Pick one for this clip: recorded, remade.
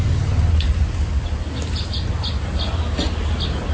recorded